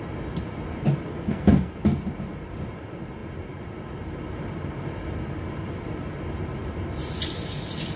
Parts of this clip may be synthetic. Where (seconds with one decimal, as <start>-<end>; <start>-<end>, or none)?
1.1-2.0